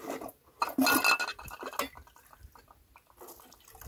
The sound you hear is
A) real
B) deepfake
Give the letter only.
A